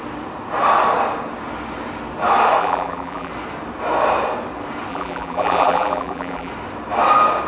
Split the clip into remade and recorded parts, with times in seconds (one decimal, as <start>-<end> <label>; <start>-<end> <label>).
0.0-2.6 recorded; 2.6-3.3 remade; 3.3-4.9 recorded; 4.9-6.5 remade; 6.5-7.5 recorded